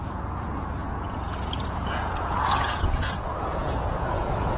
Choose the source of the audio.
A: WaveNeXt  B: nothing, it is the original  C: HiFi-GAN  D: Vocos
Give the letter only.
D